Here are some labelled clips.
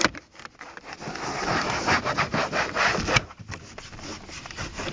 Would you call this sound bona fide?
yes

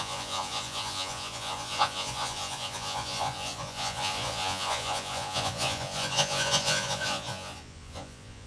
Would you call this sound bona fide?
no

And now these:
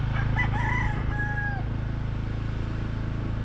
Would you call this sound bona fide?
yes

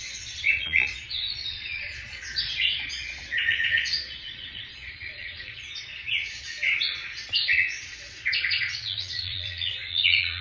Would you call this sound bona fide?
no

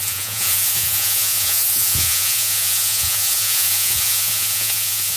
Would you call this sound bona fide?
no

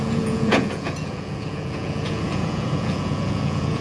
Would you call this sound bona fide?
no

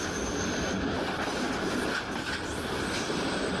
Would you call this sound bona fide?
yes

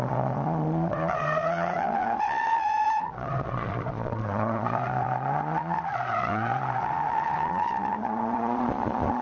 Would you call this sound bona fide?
no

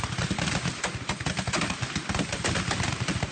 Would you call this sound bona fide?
yes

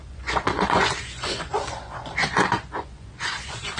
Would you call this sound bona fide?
no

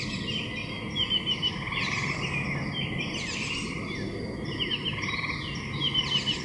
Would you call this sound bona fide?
yes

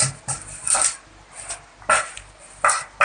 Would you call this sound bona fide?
yes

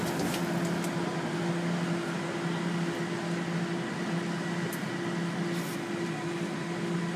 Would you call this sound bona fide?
yes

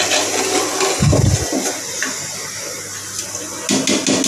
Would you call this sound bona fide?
yes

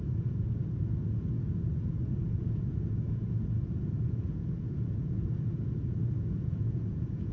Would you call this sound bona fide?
no